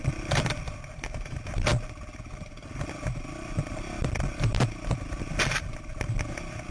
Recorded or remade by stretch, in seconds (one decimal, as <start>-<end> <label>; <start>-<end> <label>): 0.0-6.7 recorded

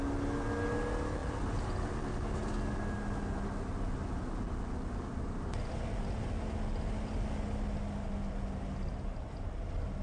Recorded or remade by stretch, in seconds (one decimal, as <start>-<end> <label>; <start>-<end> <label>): 0.0-10.0 recorded

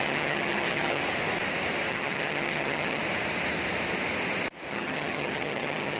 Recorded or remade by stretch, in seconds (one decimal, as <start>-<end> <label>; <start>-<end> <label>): 0.0-1.0 remade; 1.0-1.9 recorded; 1.9-3.0 remade; 3.0-4.7 recorded; 4.7-6.0 remade

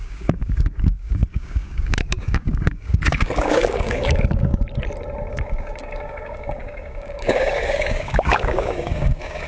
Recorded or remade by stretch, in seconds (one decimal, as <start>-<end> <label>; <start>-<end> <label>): 0.0-4.5 remade; 4.5-5.3 recorded; 5.3-9.5 remade

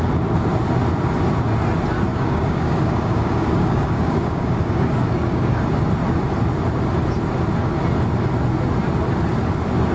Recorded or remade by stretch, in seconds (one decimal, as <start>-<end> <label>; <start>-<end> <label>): 0.0-2.1 recorded; 2.1-5.6 remade; 5.6-9.9 recorded

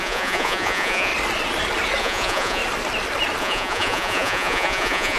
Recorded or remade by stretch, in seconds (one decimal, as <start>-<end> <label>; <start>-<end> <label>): 0.0-1.1 remade; 1.1-2.0 recorded; 2.0-2.6 remade; 2.6-3.4 recorded; 3.4-5.2 remade

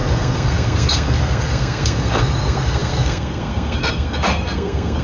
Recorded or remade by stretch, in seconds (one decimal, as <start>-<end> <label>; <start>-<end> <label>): 0.0-5.0 remade